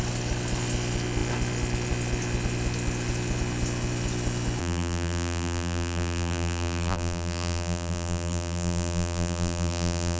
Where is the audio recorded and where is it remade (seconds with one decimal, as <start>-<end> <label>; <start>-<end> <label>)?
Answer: 0.0-4.6 recorded; 4.6-10.2 remade